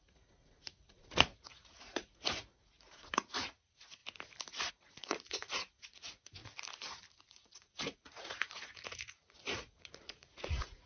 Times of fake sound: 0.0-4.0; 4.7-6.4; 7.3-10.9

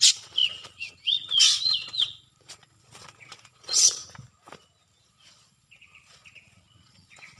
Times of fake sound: 0.0-4.0; 5.0-7.4

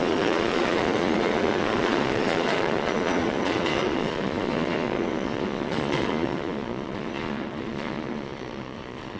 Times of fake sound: 0.0-9.2